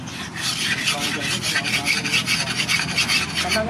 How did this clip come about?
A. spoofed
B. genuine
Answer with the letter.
B